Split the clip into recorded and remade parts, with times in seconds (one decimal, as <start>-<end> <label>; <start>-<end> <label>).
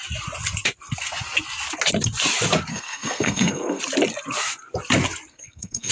0.0-2.7 recorded; 2.7-3.8 remade; 3.8-5.3 recorded; 5.3-5.9 remade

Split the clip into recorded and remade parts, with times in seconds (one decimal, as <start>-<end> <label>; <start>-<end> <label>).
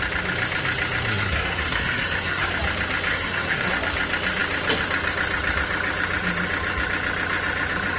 0.0-1.1 recorded; 1.1-2.5 remade; 2.5-3.1 recorded; 3.1-3.7 remade; 3.7-8.0 recorded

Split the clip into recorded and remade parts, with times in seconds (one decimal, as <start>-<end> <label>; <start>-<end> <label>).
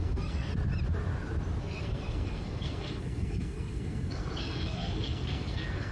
0.0-0.5 remade; 0.5-1.6 recorded; 1.6-5.9 remade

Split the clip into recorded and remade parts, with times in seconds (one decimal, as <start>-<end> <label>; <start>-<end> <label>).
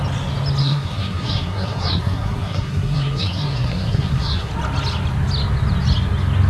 0.0-0.6 recorded; 0.6-4.5 remade; 4.5-6.5 recorded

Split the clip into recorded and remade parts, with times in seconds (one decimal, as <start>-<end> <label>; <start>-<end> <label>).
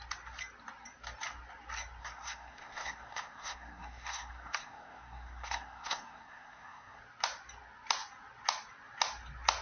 0.0-2.0 recorded; 2.0-7.0 remade; 7.0-9.6 recorded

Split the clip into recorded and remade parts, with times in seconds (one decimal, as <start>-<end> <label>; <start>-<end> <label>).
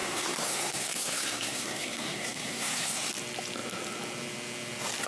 0.0-3.1 remade; 3.1-5.1 recorded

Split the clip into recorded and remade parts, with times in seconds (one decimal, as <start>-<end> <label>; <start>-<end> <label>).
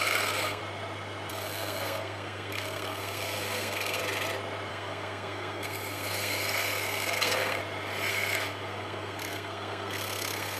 0.0-0.6 remade; 0.6-1.3 recorded; 1.3-4.0 remade; 4.0-4.7 recorded; 4.7-7.6 remade; 7.6-8.1 recorded; 8.1-10.6 remade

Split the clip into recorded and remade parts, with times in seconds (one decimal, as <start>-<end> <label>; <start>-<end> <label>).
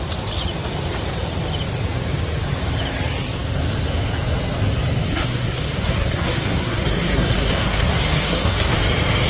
0.0-5.1 recorded; 5.1-8.8 remade; 8.8-9.3 recorded